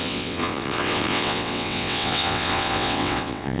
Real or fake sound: fake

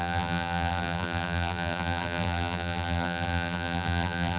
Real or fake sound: fake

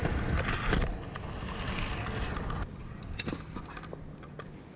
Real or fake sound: real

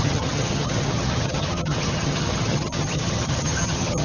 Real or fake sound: fake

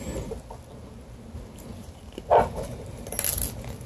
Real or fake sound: real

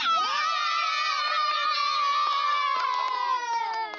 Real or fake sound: real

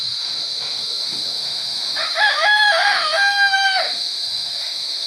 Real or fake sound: fake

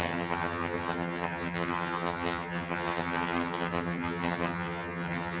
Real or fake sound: fake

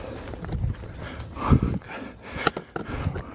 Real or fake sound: real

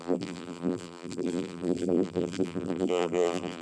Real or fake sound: fake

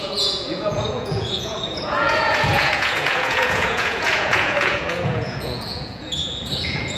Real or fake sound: fake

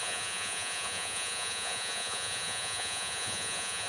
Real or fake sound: fake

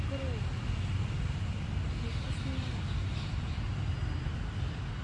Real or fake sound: real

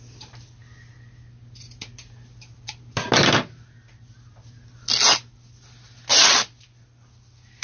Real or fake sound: real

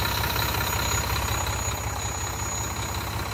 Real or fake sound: real